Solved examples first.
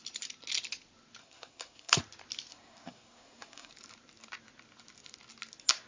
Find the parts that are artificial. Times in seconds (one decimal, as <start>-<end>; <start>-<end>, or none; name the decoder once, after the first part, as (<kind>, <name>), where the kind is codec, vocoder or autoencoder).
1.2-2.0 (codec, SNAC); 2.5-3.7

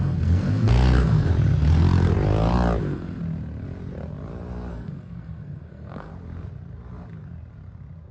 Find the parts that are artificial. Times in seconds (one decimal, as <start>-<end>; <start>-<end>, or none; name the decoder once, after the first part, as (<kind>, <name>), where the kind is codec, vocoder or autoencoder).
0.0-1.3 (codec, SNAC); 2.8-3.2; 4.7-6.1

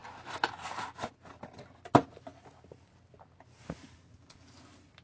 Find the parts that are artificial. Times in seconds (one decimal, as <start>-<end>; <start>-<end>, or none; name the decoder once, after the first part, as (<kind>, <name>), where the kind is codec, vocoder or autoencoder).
none

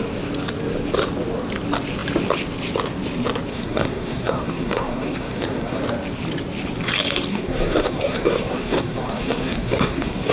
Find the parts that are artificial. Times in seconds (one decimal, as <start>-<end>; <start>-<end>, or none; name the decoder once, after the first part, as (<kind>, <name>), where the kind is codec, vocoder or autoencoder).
3.5-5.8 (codec, SNAC); 7.3-10.3

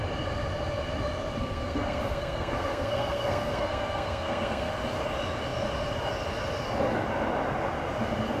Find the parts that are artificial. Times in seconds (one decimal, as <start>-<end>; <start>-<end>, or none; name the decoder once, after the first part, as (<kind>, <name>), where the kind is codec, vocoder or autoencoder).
1.4-4.7 (codec, SNAC)